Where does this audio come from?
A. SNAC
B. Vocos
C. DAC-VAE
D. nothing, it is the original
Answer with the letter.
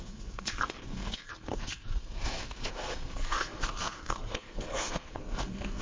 A